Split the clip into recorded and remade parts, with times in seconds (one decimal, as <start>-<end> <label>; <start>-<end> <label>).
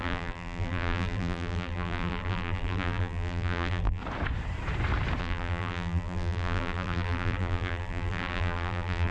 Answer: 0.0-4.0 remade; 4.0-5.2 recorded; 5.2-9.1 remade